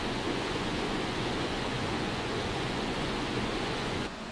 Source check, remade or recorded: remade